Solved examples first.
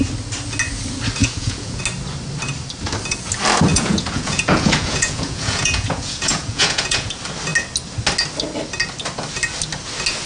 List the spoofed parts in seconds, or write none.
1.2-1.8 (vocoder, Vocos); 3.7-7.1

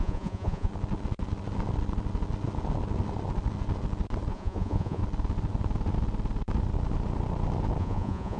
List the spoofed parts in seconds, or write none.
0.0-0.7 (vocoder, Vocos); 4.3-5.0; 7.8-8.4